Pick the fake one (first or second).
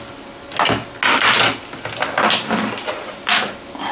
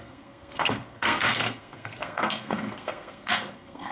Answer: second